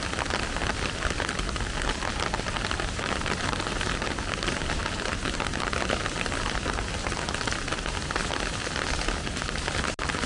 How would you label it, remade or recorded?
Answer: recorded